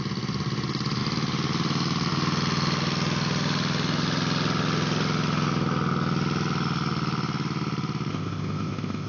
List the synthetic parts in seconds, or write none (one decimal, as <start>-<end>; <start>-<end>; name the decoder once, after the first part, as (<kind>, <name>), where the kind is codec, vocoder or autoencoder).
8.1-9.1 (codec, ZipCodec)